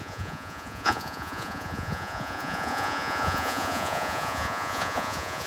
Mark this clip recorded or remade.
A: remade